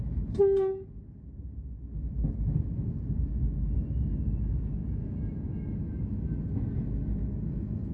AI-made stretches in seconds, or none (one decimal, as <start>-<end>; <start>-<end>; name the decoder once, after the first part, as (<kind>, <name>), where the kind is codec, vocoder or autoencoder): none